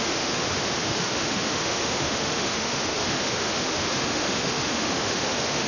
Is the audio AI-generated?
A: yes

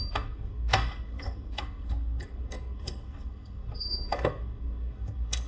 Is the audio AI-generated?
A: yes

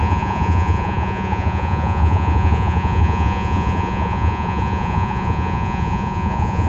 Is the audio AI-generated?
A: yes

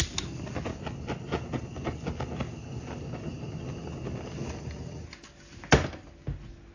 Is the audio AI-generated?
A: no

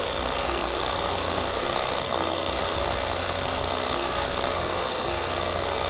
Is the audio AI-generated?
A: yes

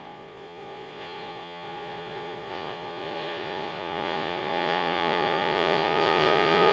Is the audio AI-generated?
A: yes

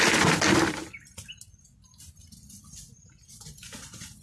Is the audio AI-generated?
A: no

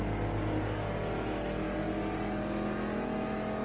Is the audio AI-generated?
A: no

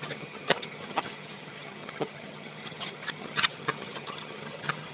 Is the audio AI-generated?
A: yes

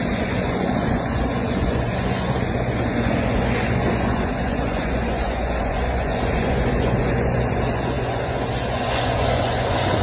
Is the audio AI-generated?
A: yes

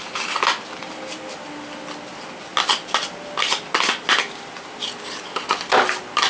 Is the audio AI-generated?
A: no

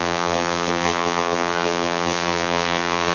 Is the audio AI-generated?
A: yes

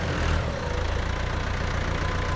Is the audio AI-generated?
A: no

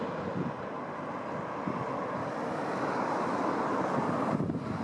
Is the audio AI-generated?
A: no